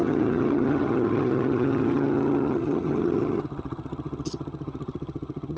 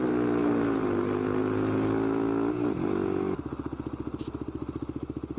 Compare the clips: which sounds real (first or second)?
second